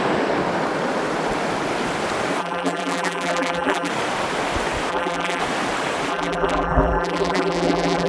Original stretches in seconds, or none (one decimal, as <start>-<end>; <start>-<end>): 0.0-2.4; 3.9-4.9; 5.4-6.1